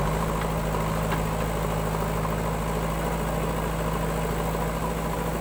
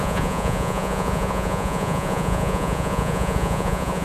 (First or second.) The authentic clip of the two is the first